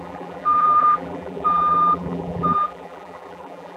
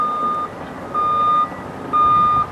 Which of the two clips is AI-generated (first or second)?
first